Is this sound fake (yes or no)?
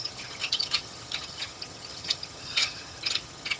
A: yes